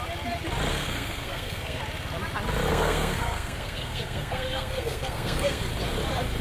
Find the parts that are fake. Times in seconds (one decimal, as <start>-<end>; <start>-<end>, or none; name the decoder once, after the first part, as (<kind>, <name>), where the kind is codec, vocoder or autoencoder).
0.7-1.8 (codec, SNAC); 2.7-5.6